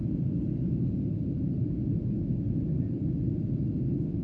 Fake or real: real